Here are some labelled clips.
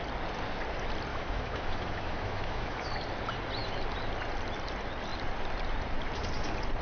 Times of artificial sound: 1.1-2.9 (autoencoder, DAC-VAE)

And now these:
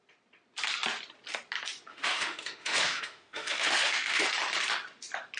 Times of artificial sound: 1.9-4.2 (autoencoder, DAC-VAE)